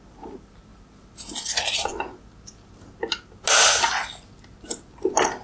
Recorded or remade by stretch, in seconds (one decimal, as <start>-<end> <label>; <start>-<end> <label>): 0.0-5.4 recorded